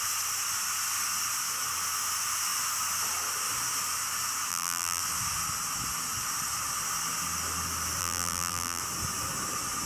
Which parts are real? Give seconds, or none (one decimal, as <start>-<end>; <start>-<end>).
0.0-4.5; 5.0-8.0; 8.8-9.9